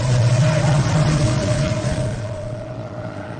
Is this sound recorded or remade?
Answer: remade